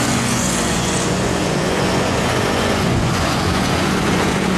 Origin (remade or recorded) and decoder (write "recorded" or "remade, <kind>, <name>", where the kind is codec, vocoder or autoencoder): remade, vocoder, Vocos